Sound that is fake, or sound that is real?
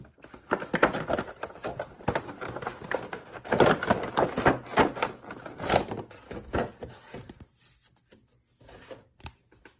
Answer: real